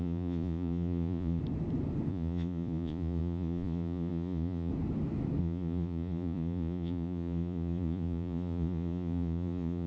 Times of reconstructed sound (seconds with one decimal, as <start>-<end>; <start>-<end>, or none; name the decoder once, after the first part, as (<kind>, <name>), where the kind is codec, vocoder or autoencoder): 0.0-1.4 (vocoder, Vocos); 2.1-4.7; 5.4-9.9